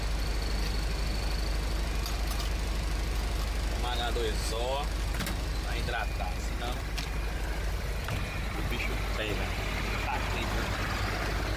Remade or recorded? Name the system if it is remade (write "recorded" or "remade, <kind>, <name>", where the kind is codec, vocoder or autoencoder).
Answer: recorded